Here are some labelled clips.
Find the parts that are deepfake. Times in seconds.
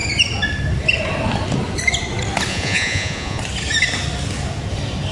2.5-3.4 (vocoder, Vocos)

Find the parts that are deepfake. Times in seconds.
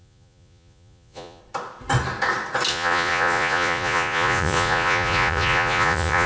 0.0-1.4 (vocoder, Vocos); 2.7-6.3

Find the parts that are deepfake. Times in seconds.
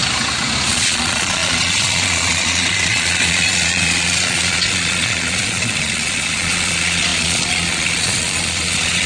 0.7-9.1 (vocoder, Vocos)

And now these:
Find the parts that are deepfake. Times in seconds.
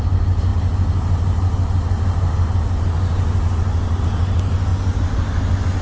none